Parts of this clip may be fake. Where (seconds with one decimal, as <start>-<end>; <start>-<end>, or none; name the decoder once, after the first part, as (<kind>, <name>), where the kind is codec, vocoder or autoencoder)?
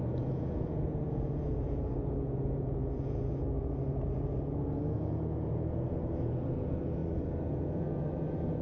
0.0-7.0 (vocoder, Vocos); 7.5-8.6